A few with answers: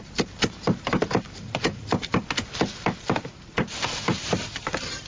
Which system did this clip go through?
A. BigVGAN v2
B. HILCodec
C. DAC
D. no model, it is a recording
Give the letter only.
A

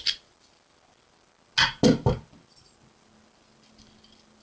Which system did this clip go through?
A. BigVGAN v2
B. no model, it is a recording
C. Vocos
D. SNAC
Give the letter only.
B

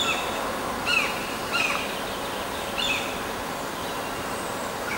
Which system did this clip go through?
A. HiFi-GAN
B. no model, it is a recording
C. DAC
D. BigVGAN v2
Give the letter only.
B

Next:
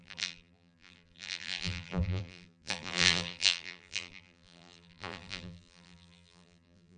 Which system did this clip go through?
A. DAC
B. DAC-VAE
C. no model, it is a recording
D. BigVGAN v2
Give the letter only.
D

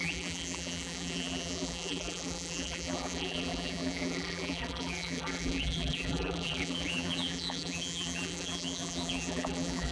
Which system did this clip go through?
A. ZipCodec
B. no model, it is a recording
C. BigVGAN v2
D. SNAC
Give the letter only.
C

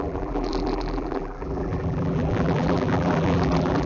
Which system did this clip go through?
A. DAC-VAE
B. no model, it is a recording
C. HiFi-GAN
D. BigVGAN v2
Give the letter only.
D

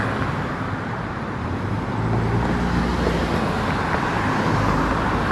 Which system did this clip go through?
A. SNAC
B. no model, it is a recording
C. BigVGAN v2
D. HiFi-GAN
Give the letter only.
B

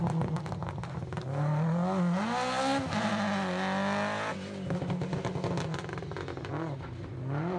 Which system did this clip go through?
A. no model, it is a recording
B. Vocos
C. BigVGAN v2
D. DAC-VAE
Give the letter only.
A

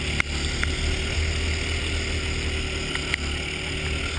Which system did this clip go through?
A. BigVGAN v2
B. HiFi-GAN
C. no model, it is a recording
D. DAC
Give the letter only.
C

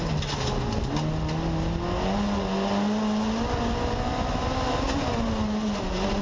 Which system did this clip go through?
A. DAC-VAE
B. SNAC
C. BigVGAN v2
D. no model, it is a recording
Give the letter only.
D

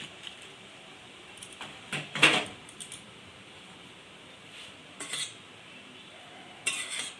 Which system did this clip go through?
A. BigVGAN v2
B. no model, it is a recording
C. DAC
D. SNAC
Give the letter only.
A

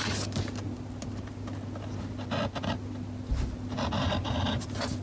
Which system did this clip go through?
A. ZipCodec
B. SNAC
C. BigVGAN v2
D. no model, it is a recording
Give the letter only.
D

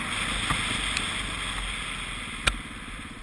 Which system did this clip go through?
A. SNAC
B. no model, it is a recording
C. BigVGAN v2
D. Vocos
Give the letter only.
B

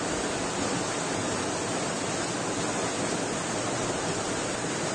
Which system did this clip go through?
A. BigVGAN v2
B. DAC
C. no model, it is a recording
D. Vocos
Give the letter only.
C